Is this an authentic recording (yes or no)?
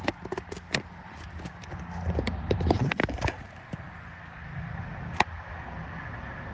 yes